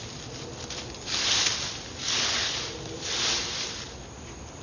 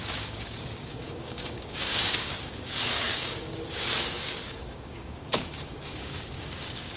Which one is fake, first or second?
second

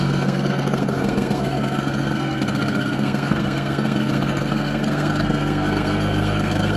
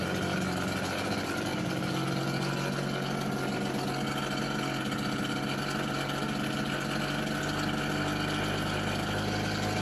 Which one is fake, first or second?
first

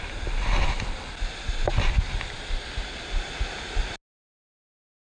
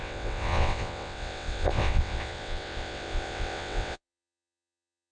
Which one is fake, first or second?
second